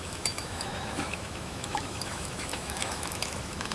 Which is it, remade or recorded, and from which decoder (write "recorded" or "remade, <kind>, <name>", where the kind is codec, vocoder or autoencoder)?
remade, autoencoder, DAC-VAE